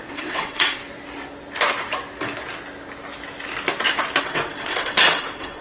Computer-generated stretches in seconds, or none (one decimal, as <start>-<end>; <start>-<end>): 0.0-0.8; 4.2-5.6